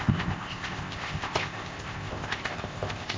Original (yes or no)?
no